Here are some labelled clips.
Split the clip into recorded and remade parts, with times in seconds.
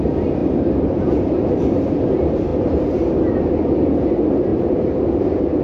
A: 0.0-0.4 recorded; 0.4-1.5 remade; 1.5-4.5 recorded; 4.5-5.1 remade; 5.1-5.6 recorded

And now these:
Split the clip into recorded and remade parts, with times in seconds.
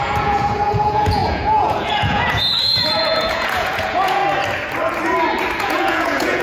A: 0.0-4.2 remade; 4.2-5.6 recorded; 5.6-6.4 remade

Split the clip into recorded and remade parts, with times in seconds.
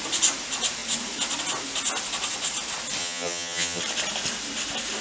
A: 0.0-3.0 recorded; 3.0-3.8 remade; 3.8-5.0 recorded